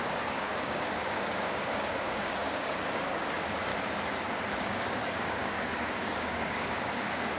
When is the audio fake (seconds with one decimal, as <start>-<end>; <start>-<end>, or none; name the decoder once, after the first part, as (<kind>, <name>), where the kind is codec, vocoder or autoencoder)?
0.0-3.7 (codec, DAC); 4.6-7.4